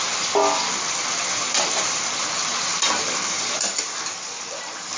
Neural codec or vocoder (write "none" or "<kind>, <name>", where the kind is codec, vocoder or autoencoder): vocoder, BigVGAN v2